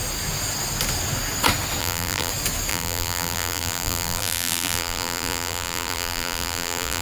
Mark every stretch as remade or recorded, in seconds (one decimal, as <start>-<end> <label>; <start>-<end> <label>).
0.0-1.8 recorded; 1.8-2.3 remade; 2.3-2.7 recorded; 2.7-7.0 remade